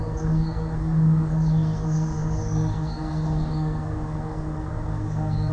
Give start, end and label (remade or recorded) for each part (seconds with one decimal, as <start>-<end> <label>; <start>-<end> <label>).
0.0-5.5 remade